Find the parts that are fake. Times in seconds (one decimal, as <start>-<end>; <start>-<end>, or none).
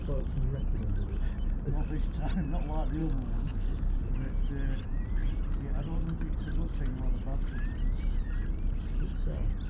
3.0-4.0